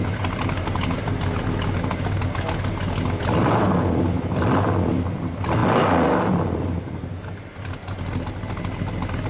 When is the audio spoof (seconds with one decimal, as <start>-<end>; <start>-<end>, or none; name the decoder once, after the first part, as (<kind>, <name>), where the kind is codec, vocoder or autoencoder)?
none

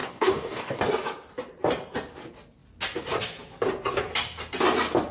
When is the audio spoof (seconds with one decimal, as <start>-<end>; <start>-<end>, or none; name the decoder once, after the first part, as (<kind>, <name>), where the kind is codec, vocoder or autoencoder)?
0.0-0.8 (codec, DAC)

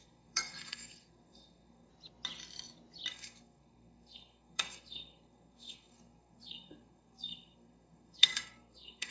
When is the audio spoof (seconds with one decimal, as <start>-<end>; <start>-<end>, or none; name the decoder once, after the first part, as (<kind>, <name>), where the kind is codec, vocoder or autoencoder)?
0.0-1.9 (codec, SNAC); 3.1-9.1

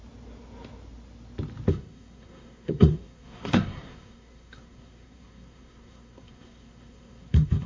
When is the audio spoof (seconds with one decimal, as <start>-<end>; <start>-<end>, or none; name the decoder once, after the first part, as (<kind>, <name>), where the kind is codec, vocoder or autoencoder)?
1.7-7.7 (codec, SNAC)

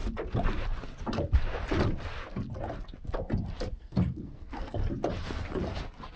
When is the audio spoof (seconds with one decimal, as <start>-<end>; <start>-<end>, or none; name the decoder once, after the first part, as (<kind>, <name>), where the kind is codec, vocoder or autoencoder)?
3.7-4.8 (codec, SNAC)

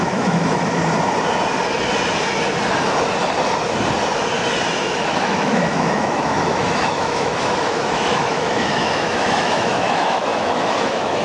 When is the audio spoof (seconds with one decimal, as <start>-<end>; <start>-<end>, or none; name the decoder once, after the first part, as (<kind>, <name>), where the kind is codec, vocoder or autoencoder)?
0.0-0.8 (autoencoder, DAC-VAE); 4.8-11.2

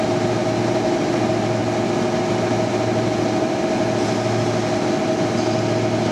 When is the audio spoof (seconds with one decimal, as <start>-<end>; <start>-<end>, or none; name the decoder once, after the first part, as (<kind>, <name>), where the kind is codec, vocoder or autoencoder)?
0.4-1.2 (vocoder, BigVGAN v2)

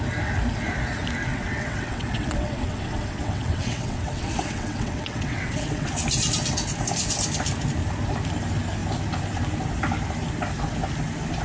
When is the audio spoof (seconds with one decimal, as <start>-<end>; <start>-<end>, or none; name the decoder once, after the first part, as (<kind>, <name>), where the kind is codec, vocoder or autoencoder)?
1.3-5.9 (vocoder, WaveNeXt)